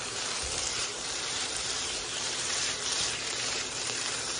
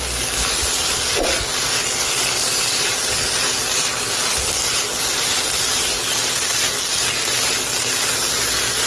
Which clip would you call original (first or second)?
second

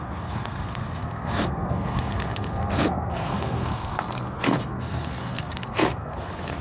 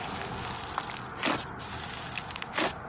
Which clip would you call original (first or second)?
second